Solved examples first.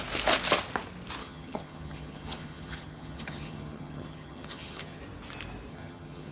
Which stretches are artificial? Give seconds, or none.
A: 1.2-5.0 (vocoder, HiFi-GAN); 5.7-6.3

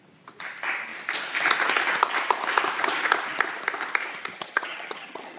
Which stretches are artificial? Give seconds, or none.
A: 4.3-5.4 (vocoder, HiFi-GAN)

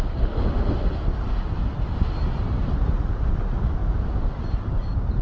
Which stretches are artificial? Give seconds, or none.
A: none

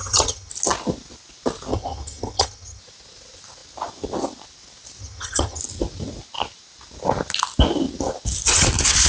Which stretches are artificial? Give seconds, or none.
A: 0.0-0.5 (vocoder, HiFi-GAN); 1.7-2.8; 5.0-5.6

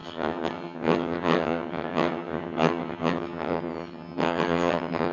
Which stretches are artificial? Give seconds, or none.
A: 0.0-5.1 (vocoder, HiFi-GAN)

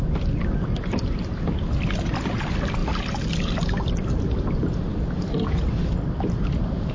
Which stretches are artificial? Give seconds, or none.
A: none

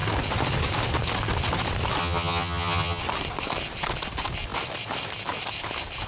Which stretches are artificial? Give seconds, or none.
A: 2.0-3.0 (vocoder, HiFi-GAN)